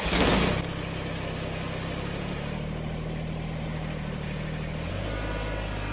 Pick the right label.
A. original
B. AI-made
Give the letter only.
A